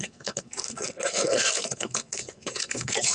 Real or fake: fake